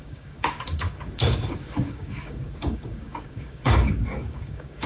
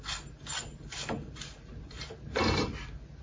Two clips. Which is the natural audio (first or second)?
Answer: second